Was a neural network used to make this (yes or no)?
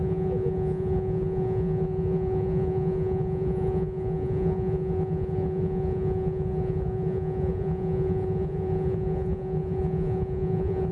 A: yes